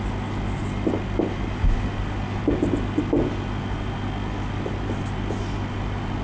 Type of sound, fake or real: real